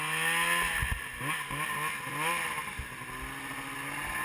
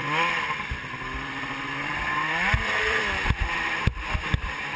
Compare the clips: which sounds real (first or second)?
first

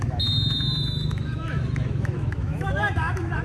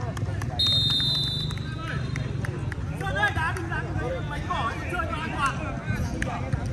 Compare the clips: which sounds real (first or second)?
second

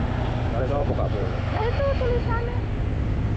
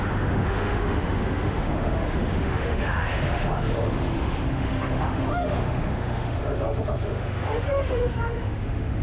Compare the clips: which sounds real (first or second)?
first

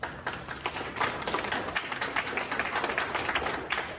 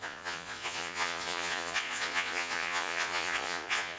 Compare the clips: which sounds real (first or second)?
first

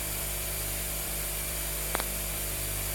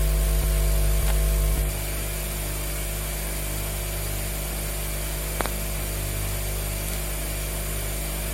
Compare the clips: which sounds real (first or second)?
second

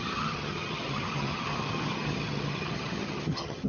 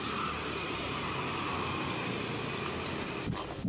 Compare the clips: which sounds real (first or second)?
second